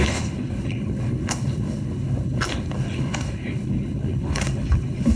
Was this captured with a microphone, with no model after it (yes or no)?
no